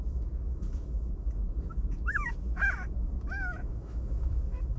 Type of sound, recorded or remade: remade